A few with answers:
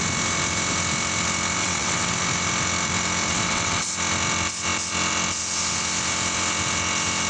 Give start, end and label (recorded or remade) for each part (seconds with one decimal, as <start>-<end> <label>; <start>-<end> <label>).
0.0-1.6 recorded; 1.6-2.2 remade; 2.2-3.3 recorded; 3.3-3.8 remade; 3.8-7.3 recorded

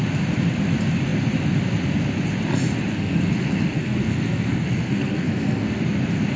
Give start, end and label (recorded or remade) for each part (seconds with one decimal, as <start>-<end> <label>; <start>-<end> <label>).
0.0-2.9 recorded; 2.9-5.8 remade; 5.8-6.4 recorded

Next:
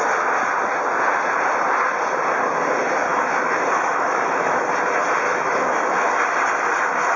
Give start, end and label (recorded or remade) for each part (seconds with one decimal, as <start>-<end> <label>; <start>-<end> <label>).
0.0-3.0 recorded; 3.0-4.6 remade; 4.6-5.3 recorded; 5.3-6.1 remade; 6.1-7.2 recorded

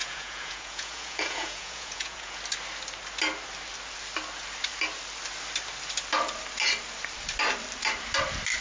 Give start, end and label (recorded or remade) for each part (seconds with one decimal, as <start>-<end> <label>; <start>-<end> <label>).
0.0-2.4 remade; 2.4-8.6 recorded

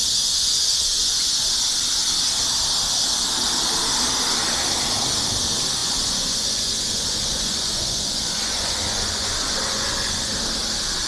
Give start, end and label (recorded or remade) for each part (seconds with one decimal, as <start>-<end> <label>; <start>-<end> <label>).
0.0-1.5 remade; 1.5-5.8 recorded; 5.8-10.3 remade; 10.3-11.1 recorded

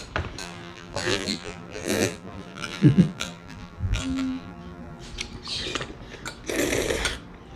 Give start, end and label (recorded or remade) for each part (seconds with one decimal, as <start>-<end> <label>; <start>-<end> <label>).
0.0-0.4 recorded; 0.4-5.0 remade; 5.0-7.6 recorded

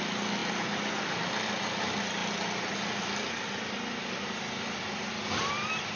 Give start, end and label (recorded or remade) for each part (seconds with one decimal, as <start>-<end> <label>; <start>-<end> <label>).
0.0-6.0 recorded

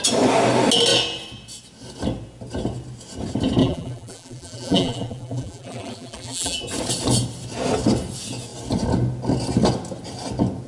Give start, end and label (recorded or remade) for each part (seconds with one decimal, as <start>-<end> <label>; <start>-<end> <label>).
0.0-3.6 recorded; 3.6-6.6 remade; 6.6-10.7 recorded